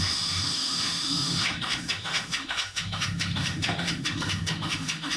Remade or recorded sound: remade